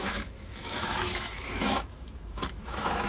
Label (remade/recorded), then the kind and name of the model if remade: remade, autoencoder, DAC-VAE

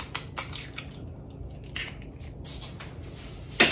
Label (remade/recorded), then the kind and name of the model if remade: recorded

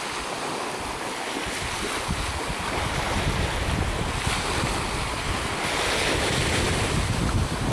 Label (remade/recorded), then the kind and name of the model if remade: recorded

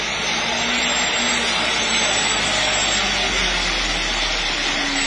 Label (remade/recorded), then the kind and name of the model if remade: recorded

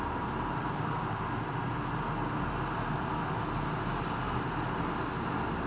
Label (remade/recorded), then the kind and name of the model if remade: recorded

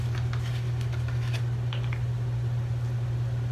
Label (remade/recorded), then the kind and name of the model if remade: recorded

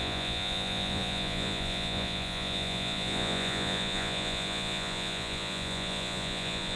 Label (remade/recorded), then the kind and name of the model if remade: remade, vocoder, Vocos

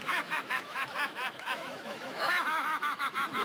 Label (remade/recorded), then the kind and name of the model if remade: remade, autoencoder, DAC-VAE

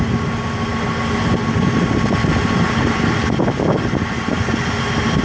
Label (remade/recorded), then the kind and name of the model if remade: recorded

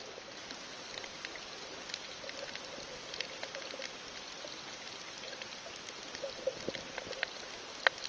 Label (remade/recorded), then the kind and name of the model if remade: recorded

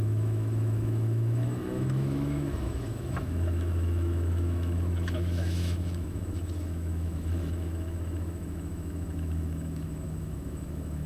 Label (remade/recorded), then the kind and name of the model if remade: remade, autoencoder, DAC-VAE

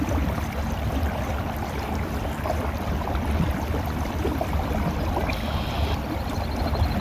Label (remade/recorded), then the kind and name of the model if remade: remade, vocoder, BigVGAN v2